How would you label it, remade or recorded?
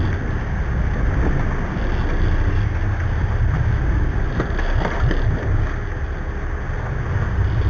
recorded